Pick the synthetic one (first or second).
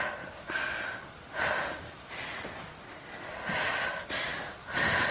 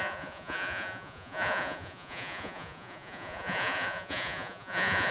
second